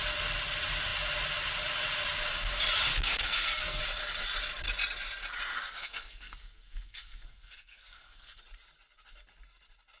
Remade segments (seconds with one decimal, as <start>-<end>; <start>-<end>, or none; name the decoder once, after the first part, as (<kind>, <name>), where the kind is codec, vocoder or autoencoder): 2.9-3.8 (codec, SNAC); 5.5-8.4